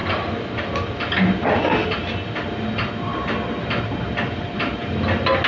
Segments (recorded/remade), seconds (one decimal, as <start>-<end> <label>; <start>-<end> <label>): 0.0-5.5 recorded